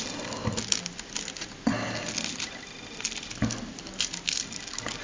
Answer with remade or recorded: recorded